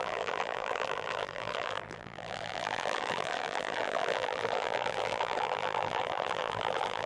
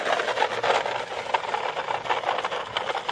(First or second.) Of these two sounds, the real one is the second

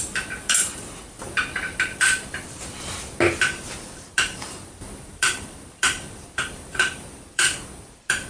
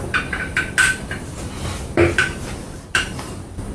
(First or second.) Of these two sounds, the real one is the second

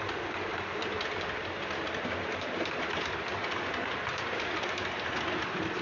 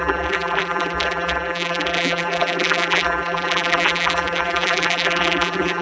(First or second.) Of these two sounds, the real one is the first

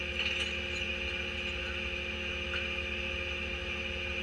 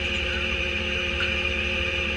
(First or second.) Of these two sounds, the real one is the first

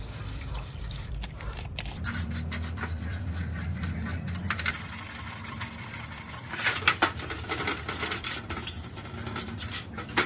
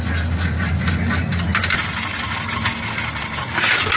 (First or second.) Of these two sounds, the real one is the second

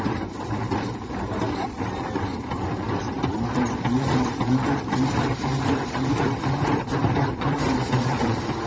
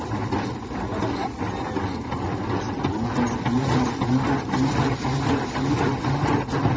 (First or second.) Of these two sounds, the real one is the second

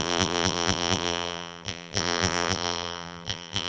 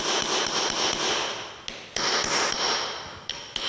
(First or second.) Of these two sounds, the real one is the second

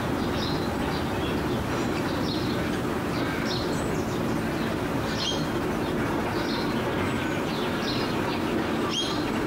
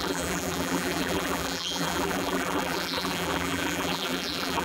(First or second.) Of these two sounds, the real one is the first